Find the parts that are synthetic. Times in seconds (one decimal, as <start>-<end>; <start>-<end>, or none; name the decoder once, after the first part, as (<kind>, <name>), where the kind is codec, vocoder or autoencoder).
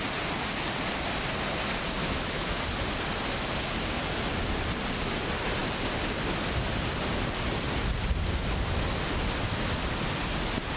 2.0-2.6 (autoencoder, DAC-VAE)